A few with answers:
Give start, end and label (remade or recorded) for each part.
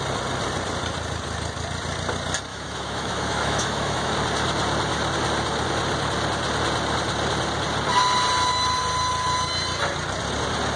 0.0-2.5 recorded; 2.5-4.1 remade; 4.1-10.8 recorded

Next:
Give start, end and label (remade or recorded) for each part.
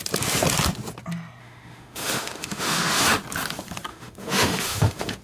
0.0-1.4 recorded; 1.4-3.0 remade; 3.0-3.9 recorded; 3.9-5.2 remade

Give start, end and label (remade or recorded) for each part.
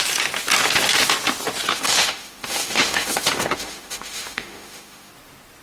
0.0-1.7 recorded; 1.7-5.1 remade; 5.1-5.6 recorded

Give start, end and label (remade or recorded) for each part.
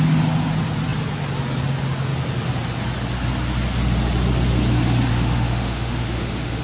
0.0-5.1 recorded; 5.1-6.6 remade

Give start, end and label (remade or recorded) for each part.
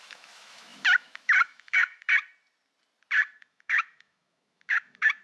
0.0-2.0 remade; 2.0-3.4 recorded; 3.4-5.2 remade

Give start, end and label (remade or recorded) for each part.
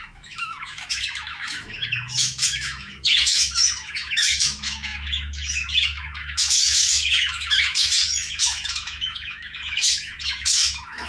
0.0-11.1 remade